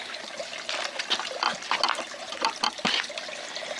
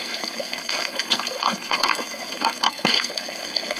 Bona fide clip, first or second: first